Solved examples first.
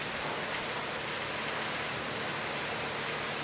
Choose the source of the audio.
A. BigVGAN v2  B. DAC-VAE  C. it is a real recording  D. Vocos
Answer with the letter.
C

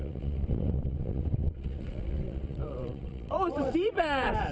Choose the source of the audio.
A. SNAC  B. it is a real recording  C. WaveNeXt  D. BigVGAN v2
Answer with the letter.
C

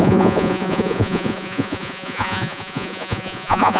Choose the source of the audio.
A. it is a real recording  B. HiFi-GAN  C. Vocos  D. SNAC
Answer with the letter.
C